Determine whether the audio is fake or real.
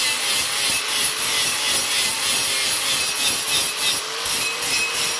real